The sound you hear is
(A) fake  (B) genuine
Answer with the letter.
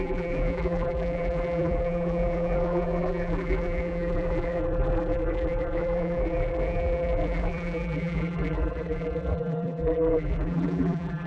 A